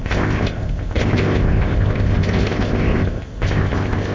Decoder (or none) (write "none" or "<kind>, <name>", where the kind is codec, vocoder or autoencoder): codec, ZipCodec